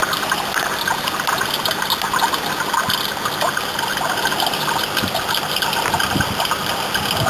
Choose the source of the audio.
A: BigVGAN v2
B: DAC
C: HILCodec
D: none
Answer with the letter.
D